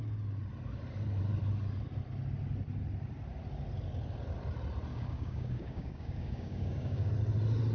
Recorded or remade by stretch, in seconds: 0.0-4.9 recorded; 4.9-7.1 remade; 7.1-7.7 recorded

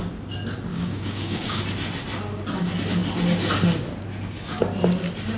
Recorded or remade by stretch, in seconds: 0.0-0.7 recorded; 0.7-1.6 remade; 1.6-5.4 recorded